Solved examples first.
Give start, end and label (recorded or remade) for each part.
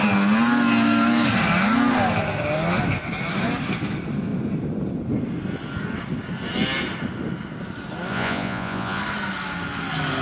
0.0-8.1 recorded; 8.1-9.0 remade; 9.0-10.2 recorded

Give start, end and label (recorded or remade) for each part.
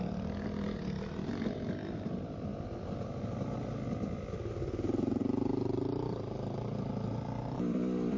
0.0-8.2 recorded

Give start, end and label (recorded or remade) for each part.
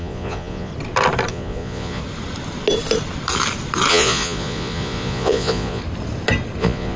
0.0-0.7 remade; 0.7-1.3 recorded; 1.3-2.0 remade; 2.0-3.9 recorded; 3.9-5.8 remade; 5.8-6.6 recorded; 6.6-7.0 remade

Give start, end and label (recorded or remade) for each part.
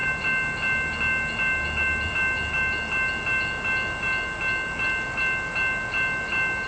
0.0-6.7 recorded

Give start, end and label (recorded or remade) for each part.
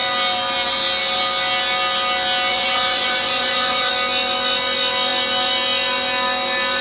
0.0-2.5 recorded; 2.5-3.9 remade; 3.9-6.8 recorded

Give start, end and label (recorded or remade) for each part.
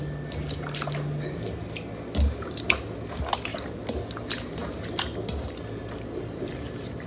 0.0-7.1 recorded